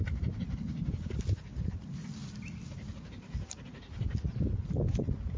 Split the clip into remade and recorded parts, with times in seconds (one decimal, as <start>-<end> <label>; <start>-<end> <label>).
0.0-5.4 recorded

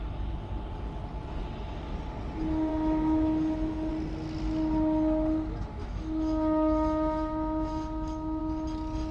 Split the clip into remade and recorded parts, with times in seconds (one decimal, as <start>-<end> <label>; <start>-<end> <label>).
0.0-2.7 recorded; 2.7-3.9 remade; 3.9-5.8 recorded; 5.8-8.4 remade; 8.4-9.1 recorded